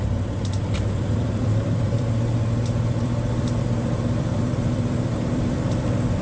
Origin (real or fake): fake